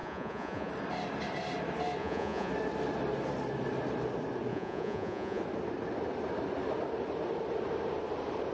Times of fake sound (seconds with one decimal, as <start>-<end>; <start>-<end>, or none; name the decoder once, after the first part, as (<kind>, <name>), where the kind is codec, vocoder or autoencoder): 0.0-0.7 (vocoder, Vocos); 2.0-2.5; 4.5-5.4